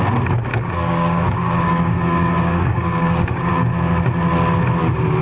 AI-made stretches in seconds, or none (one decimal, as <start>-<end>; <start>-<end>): 0.5-3.5